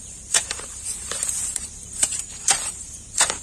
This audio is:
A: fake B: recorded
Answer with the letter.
A